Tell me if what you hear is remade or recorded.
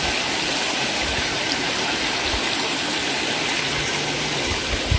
recorded